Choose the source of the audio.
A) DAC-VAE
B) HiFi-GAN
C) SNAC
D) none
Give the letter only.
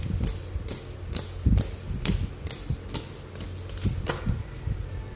D